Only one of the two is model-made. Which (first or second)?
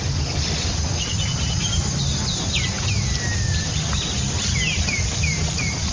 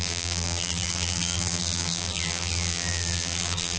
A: second